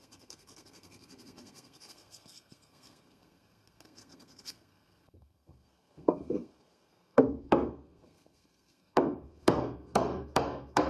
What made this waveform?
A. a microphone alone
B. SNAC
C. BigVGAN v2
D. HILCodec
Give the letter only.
B